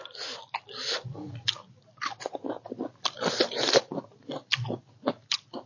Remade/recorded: recorded